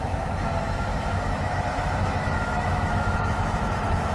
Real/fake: fake